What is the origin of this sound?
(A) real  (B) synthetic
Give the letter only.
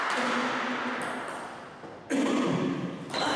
A